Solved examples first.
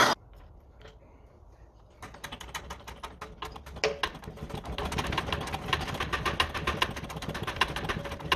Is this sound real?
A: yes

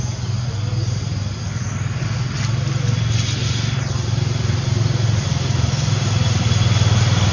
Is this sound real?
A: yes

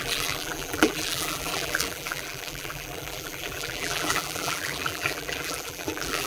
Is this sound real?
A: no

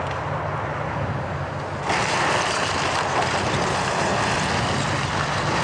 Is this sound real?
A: yes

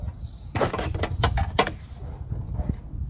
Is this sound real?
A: no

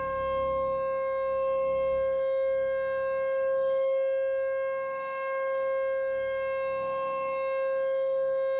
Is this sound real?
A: no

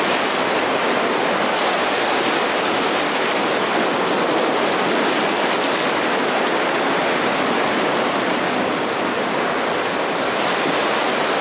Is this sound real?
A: yes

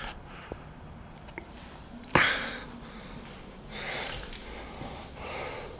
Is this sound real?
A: yes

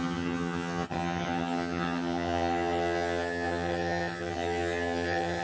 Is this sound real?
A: no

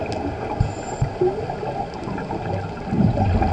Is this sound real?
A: yes